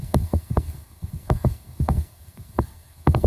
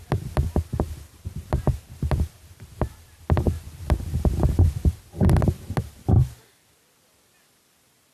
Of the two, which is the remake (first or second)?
first